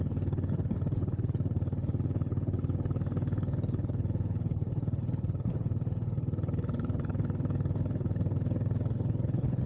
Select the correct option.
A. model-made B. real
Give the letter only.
A